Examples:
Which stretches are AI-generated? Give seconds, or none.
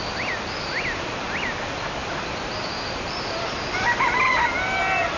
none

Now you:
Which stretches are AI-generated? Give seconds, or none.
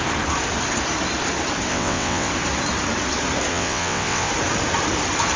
1.7-2.3 (vocoder, WaveNeXt); 3.5-4.3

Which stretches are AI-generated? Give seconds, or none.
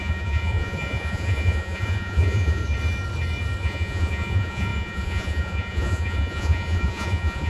0.0-2.6 (vocoder, Vocos); 3.6-7.5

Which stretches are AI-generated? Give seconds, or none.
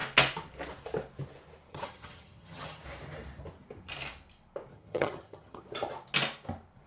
1.7-2.8 (vocoder, HiFi-GAN); 4.7-5.6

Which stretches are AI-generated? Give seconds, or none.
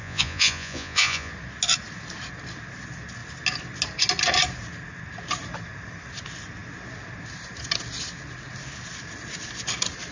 0.0-1.3 (vocoder, Vocos)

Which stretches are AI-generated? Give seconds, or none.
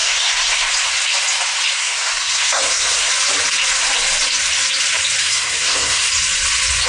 0.0-0.7 (codec, SNAC); 1.8-3.1; 5.2-6.1